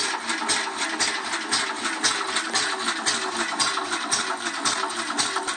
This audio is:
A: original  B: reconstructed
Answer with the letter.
A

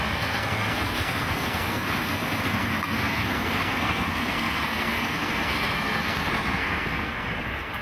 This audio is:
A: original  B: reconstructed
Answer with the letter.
B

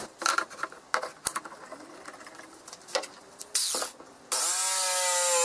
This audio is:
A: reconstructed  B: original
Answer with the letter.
B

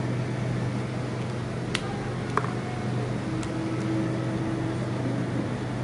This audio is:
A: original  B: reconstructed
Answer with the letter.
A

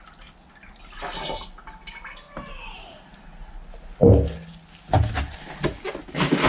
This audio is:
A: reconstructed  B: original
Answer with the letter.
B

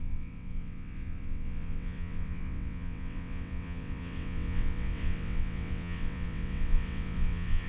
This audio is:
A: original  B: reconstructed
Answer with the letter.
B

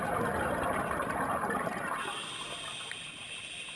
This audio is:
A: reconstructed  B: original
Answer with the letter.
B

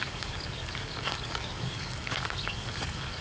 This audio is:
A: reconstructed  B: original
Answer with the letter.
A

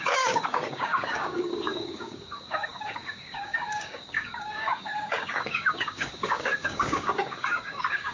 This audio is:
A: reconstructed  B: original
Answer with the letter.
A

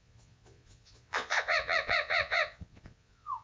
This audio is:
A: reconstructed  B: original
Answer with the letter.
A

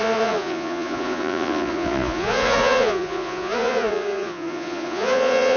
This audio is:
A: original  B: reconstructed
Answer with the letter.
B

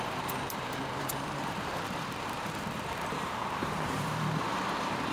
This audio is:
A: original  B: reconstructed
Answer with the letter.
B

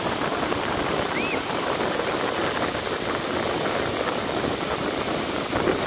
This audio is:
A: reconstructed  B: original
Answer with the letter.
B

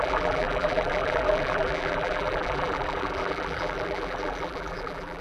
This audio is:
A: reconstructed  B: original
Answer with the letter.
A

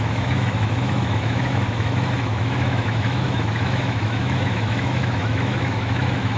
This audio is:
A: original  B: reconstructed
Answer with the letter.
B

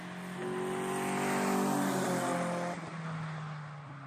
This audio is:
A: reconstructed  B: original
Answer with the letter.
B